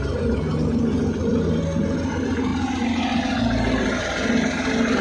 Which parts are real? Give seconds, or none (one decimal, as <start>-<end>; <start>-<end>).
0.0-5.0

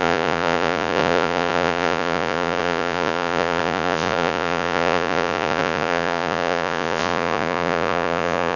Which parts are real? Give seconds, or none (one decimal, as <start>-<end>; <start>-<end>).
none

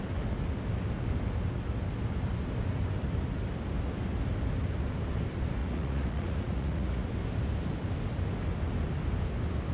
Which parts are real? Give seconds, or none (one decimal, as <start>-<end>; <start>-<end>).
0.0-5.6; 7.1-9.7

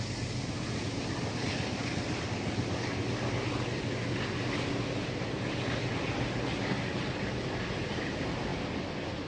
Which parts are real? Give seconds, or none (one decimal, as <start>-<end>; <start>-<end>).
0.0-9.3

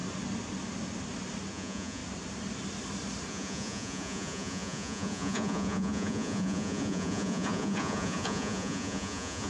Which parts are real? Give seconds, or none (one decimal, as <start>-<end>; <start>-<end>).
0.0-1.5; 2.0-3.3